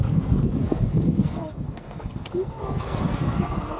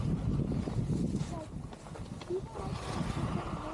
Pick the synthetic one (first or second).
first